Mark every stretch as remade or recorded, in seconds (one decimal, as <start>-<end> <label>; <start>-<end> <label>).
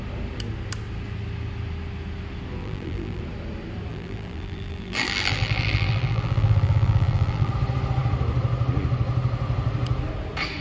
0.0-2.6 recorded; 2.6-3.2 remade; 3.2-3.9 recorded; 3.9-7.5 remade; 7.5-10.6 recorded